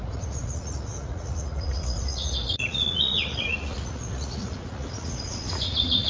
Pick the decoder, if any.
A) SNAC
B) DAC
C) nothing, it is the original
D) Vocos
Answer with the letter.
D